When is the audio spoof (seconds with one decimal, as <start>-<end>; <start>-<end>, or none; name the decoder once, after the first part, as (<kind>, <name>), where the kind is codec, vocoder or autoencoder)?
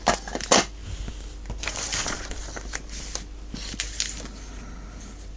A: none